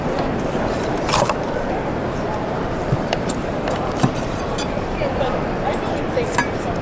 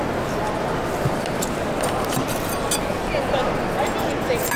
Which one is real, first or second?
second